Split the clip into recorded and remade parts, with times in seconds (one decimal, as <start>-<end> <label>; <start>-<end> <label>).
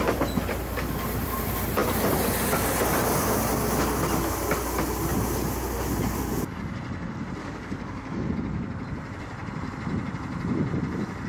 0.0-7.4 recorded; 7.4-8.3 remade; 8.3-11.3 recorded